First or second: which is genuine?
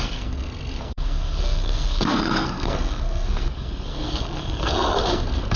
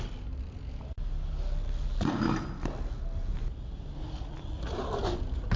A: second